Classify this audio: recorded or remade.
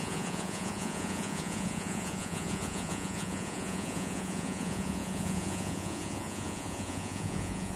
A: remade